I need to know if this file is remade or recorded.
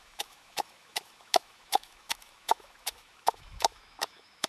remade